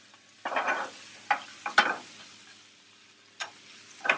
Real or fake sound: real